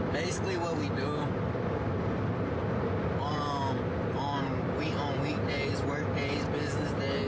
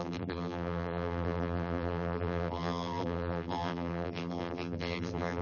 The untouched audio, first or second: first